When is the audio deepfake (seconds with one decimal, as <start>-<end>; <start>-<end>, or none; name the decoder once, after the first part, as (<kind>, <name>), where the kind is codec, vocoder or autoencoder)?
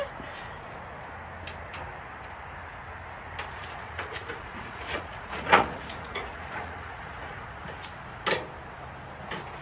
3.6-7.6 (vocoder, Vocos)